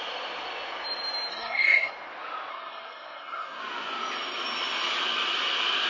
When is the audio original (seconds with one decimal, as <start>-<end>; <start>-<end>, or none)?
0.0-1.3; 1.9-2.5; 3.6-5.9